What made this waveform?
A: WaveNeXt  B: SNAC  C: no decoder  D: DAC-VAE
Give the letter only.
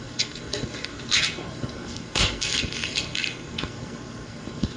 B